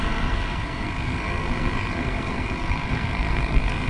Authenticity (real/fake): fake